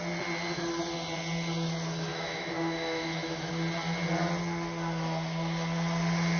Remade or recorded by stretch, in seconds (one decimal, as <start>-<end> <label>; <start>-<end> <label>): 0.0-2.1 recorded; 2.1-3.5 remade; 3.5-6.4 recorded